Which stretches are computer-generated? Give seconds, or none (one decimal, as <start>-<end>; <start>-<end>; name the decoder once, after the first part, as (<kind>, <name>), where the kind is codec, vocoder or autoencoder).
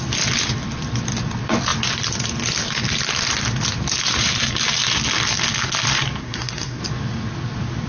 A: 6.2-6.8 (codec, SNAC)